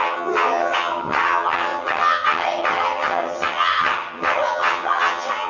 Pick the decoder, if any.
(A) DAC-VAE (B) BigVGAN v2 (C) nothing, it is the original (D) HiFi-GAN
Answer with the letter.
D